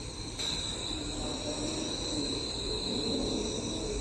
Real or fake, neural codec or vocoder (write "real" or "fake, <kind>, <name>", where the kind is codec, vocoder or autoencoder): real